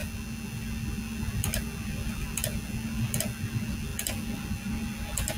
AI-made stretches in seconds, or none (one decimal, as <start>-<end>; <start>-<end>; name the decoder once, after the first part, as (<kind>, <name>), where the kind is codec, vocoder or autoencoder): none